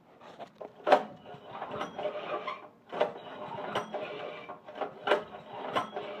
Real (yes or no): yes